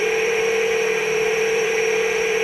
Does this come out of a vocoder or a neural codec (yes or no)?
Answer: yes